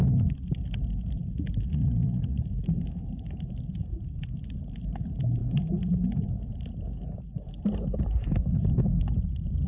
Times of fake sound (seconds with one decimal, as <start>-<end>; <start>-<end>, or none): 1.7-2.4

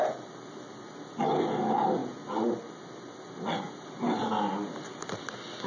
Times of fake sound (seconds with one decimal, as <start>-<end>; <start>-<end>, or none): none

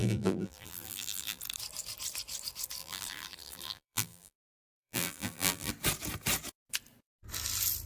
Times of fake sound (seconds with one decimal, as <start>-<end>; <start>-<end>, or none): 0.0-1.4; 2.8-5.7

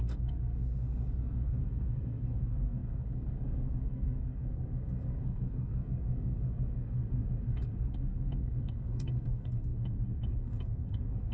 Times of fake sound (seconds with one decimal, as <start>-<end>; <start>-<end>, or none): 0.0-11.3